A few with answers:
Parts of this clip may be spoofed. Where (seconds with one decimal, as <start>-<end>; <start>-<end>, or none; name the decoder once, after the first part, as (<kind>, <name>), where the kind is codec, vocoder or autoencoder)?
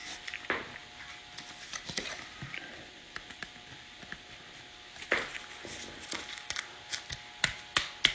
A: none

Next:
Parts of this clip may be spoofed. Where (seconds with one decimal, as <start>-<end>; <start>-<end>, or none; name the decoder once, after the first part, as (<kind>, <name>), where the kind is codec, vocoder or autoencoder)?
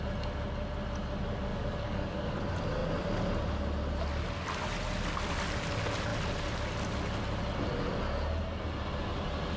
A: 1.5-2.4 (codec, DAC)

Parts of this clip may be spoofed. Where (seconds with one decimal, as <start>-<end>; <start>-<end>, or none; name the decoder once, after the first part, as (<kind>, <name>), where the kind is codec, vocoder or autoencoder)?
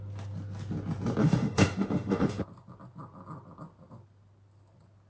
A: 1.2-2.4 (autoencoder, DAC-VAE)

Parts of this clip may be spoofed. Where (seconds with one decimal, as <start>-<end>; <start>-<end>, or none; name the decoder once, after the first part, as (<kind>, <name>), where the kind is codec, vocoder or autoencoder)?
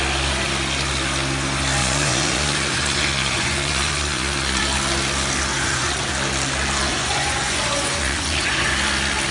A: 1.8-4.6 (vocoder, Vocos); 5.5-6.1; 6.9-8.7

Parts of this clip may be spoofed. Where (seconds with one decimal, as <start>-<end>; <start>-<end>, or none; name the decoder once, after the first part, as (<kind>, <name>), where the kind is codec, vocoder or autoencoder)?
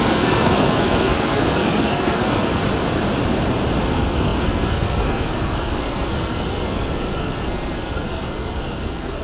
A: 0.0-2.6 (codec, SNAC); 3.8-9.2